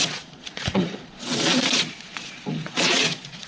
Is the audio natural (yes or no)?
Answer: no